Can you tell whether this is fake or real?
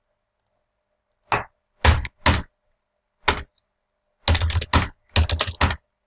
real